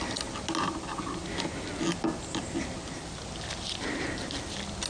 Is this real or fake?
real